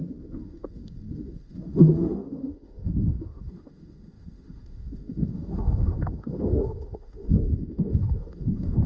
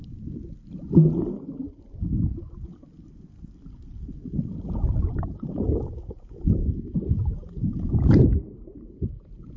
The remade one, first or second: first